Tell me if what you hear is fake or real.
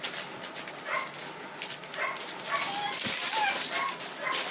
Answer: real